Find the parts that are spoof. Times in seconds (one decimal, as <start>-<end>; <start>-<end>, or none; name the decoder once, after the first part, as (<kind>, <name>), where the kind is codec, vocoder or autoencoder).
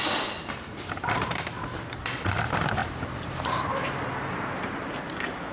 0.0-5.5 (vocoder, BigVGAN v2)